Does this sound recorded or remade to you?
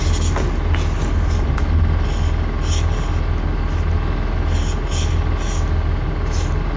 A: recorded